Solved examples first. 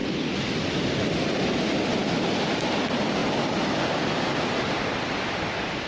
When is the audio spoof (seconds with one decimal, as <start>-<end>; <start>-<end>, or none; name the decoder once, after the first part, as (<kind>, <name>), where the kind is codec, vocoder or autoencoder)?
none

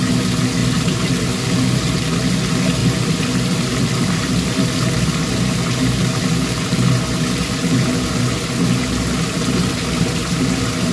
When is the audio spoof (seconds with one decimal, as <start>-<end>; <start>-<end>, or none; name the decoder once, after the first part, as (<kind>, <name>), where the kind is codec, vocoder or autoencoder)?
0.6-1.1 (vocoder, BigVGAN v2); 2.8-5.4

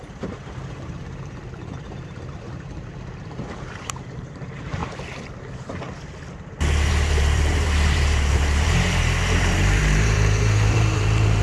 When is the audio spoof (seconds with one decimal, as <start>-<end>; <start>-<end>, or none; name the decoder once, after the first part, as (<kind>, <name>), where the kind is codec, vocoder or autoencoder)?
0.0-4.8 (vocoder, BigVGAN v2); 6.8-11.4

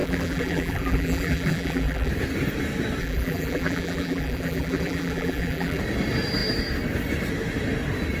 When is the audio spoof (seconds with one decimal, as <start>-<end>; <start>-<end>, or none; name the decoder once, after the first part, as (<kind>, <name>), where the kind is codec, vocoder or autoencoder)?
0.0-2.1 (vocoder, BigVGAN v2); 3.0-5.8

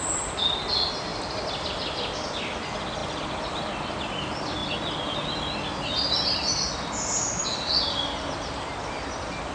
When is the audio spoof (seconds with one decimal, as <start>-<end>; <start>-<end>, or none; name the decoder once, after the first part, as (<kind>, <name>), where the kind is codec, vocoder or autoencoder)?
1.1-1.7 (vocoder, BigVGAN v2); 3.0-3.6

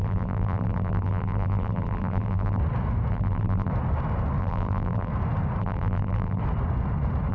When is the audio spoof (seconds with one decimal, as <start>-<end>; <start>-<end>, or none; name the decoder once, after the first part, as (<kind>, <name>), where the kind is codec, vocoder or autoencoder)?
0.0-2.6 (vocoder, BigVGAN v2); 3.1-3.7; 4.4-5.1; 5.6-6.4

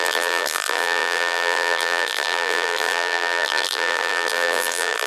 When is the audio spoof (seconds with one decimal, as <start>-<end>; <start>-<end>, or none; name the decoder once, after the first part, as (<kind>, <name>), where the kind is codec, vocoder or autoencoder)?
0.0-5.1 (vocoder, BigVGAN v2)

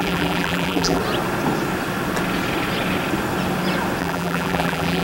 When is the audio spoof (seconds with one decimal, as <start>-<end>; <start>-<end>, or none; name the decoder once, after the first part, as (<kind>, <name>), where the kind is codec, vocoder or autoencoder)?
0.0-1.0 (vocoder, BigVGAN v2); 4.0-5.0